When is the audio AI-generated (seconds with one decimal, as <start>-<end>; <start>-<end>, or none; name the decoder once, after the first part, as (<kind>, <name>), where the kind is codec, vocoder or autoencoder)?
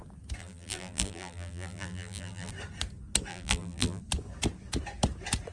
0.4-2.5 (vocoder, BigVGAN v2); 3.3-4.0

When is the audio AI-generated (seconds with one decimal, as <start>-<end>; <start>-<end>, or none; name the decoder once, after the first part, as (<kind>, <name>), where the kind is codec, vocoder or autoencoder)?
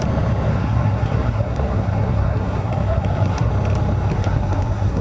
0.5-3.5 (codec, SNAC); 4.1-5.0